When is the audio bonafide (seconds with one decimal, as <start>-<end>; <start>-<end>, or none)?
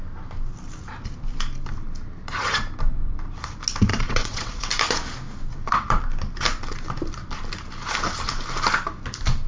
0.0-3.9; 4.7-5.5; 6.0-9.5